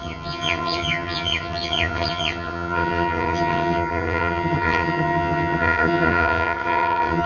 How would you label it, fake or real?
fake